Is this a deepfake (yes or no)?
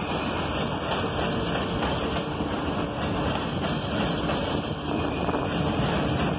no